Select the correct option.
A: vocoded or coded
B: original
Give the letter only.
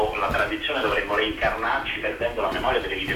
B